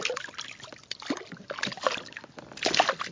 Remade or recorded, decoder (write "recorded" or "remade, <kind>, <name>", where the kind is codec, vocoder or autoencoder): recorded